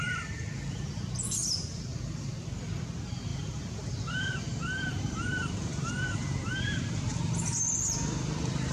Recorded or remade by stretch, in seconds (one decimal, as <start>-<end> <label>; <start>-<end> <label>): 0.0-1.4 recorded; 1.4-2.2 remade; 2.2-3.3 recorded; 3.3-6.9 remade; 6.9-8.7 recorded